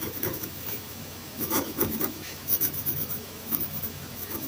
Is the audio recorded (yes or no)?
no